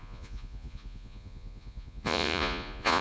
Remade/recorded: remade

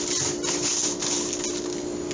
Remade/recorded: recorded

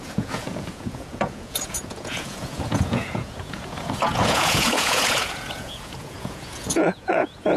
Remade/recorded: remade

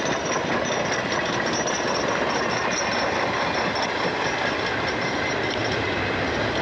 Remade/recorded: recorded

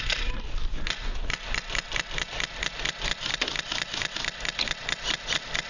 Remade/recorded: recorded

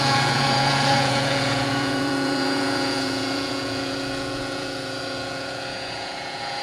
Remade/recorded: remade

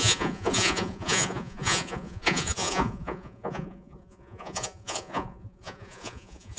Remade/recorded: remade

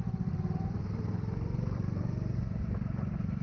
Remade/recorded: recorded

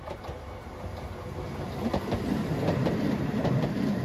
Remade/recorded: recorded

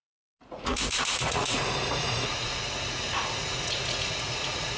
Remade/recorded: remade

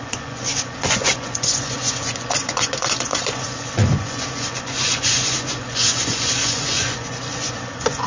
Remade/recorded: remade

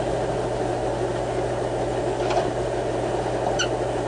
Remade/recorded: recorded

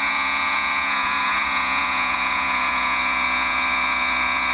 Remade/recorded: remade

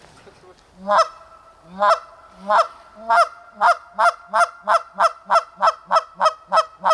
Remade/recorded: recorded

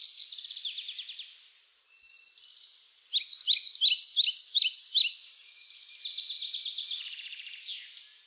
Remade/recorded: recorded